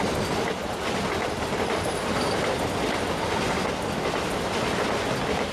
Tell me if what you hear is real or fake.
real